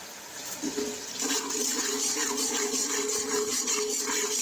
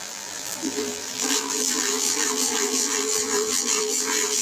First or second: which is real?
first